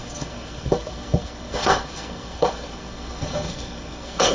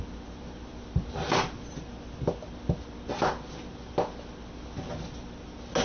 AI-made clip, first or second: first